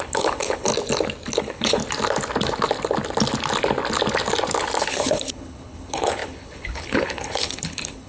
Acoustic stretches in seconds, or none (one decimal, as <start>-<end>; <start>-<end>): 0.7-1.4; 1.8-4.8